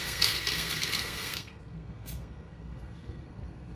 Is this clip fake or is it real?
fake